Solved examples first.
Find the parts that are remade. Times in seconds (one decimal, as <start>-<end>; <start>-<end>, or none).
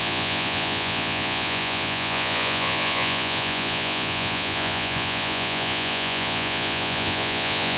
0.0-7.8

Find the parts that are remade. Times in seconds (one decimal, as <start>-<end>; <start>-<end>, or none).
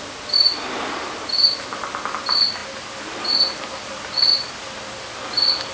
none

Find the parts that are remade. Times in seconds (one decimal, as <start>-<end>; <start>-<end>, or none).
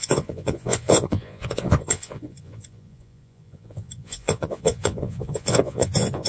0.0-6.3